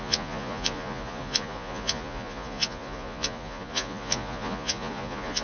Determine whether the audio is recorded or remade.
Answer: remade